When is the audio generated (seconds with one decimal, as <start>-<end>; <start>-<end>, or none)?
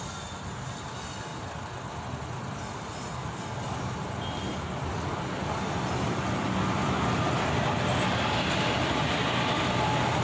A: none